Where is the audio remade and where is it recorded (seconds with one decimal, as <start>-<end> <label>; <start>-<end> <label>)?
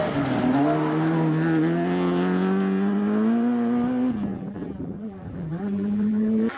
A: 0.0-4.3 recorded; 4.3-6.6 remade